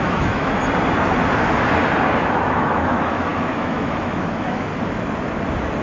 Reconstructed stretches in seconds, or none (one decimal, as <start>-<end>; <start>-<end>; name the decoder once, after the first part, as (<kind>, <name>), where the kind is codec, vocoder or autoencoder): 0.0-0.6 (autoencoder, DAC-VAE); 2.2-4.7